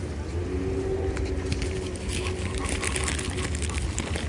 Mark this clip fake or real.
real